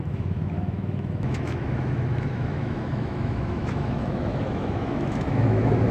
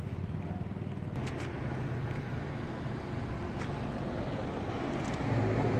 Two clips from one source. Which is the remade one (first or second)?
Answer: first